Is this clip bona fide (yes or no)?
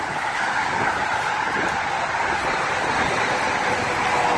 yes